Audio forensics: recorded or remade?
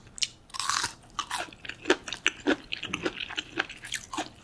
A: recorded